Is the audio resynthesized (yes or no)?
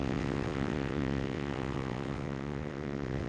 yes